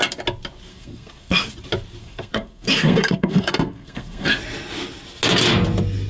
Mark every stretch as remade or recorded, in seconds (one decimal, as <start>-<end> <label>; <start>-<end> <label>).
0.0-0.7 recorded; 0.7-1.5 remade; 1.5-2.0 recorded; 2.0-4.4 remade; 4.4-6.1 recorded